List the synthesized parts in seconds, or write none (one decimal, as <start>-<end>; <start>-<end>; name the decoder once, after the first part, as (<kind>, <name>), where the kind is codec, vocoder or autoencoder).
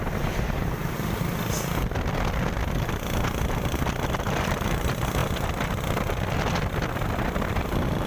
none